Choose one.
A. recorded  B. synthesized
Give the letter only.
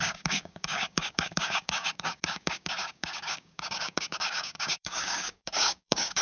B